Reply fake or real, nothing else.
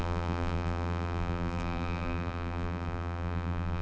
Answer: fake